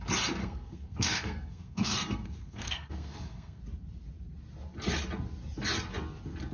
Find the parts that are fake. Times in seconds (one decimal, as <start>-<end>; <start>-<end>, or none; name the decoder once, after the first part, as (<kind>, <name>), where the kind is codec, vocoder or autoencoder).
0.4-3.6 (codec, SNAC)